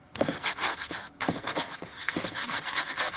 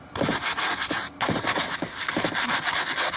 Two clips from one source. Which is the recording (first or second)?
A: second